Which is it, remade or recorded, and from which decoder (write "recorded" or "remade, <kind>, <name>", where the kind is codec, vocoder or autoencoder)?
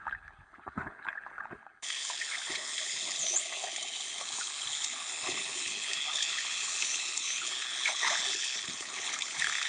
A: remade, codec, HILCodec